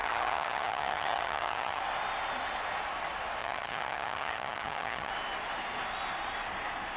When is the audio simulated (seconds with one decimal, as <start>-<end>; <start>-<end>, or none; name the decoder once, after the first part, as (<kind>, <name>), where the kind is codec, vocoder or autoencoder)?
0.0-1.8 (vocoder, HiFi-GAN); 3.4-5.1